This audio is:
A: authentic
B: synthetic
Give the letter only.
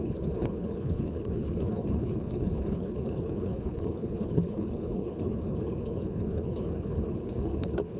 B